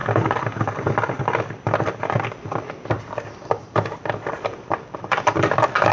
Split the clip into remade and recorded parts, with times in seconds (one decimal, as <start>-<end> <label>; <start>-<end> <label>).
0.0-3.5 recorded; 3.5-5.9 remade